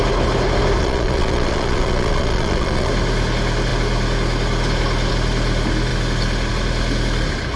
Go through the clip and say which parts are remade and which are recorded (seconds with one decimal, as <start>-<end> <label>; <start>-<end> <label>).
0.0-0.8 recorded; 0.8-2.9 remade; 2.9-7.6 recorded